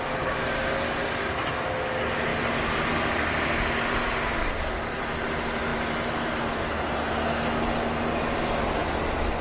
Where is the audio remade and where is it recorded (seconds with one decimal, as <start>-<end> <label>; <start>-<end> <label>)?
0.0-9.4 recorded